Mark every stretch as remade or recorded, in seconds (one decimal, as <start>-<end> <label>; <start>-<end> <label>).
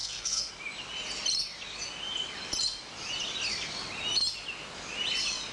0.0-0.5 remade; 0.5-5.5 recorded